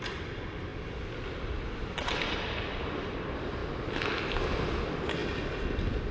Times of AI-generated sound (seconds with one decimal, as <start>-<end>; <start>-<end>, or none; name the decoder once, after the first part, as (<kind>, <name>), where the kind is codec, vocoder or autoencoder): none